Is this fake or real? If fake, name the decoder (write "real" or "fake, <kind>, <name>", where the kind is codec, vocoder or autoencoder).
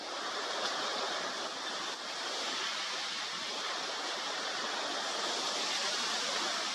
real